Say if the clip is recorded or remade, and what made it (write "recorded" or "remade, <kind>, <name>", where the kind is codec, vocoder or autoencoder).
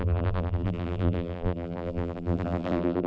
remade, vocoder, BigVGAN v2